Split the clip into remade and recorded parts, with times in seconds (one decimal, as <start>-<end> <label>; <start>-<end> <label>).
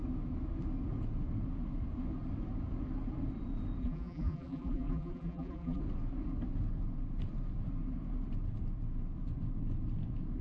0.0-3.8 recorded; 3.8-5.8 remade; 5.8-10.4 recorded